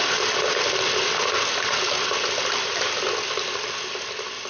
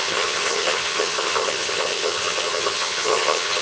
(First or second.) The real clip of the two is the first